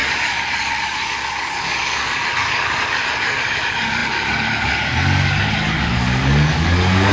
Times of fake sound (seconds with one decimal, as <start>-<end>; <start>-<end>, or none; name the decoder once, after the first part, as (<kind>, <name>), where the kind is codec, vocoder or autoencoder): 0.0-7.1 (codec, DAC)